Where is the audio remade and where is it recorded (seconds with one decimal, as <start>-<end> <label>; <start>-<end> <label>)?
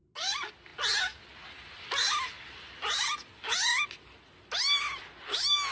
0.0-5.7 recorded